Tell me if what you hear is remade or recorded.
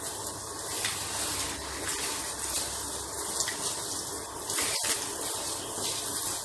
recorded